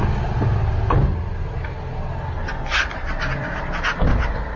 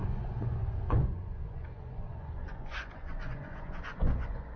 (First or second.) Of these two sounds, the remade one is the second